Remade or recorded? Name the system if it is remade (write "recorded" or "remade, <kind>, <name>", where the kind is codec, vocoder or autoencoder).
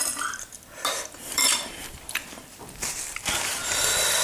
remade, vocoder, BigVGAN v2